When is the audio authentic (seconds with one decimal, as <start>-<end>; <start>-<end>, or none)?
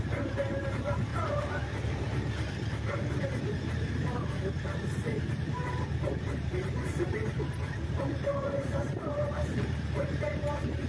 1.1-3.2